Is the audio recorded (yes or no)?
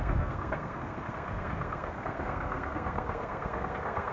no